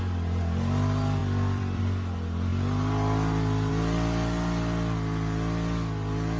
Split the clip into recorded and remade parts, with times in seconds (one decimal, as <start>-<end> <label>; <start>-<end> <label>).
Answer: 0.0-1.2 recorded; 1.2-1.8 remade; 1.8-6.4 recorded